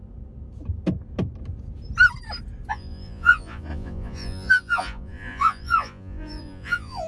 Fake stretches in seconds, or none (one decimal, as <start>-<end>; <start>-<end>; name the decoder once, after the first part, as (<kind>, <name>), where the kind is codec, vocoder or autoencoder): 2.7-7.1 (vocoder, Vocos)